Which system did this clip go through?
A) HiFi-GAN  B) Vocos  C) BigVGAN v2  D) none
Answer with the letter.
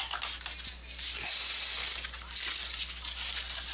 D